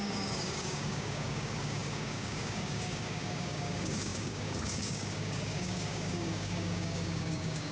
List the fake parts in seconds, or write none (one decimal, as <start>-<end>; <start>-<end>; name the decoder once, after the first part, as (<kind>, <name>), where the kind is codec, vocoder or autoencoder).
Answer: 0.0-7.7 (codec, DAC)